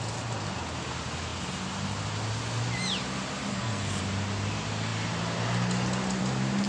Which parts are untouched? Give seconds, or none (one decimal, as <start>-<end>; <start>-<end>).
0.0-3.5; 4.0-6.7